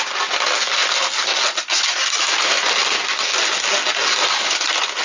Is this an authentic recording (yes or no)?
yes